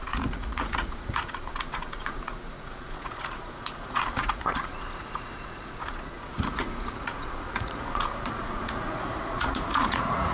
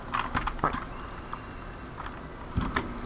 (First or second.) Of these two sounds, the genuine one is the second